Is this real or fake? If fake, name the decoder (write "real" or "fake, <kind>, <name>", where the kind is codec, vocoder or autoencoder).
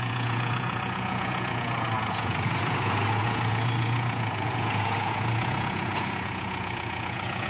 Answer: fake, vocoder, Vocos